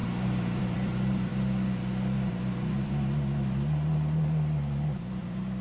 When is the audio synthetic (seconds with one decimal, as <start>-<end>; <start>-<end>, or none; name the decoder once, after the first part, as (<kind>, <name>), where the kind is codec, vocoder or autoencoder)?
0.6-1.3 (vocoder, BigVGAN v2); 4.7-5.6